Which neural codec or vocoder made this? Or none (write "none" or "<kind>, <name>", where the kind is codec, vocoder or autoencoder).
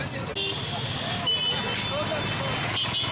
none